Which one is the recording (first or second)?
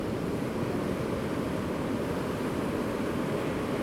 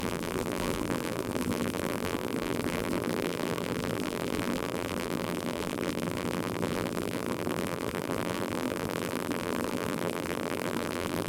first